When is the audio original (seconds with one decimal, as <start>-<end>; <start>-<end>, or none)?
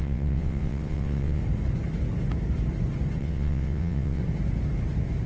1.4-3.2; 4.2-5.3